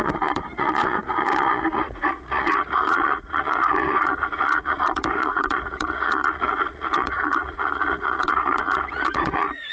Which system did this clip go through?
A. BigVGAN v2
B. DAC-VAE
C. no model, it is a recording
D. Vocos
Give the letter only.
D